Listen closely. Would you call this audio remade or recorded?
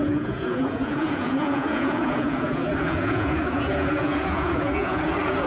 remade